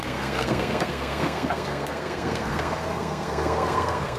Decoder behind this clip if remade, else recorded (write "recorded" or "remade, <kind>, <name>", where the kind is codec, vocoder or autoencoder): remade, codec, SNAC